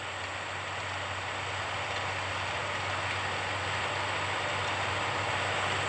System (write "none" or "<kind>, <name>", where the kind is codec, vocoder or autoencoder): none